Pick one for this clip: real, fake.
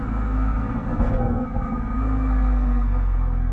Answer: fake